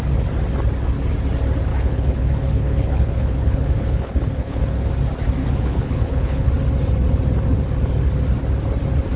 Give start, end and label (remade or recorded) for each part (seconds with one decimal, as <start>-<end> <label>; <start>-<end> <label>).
0.0-1.7 recorded; 1.7-4.9 remade; 4.9-5.4 recorded; 5.4-6.5 remade; 6.5-9.2 recorded